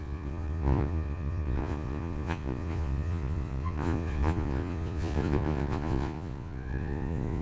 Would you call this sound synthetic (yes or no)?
yes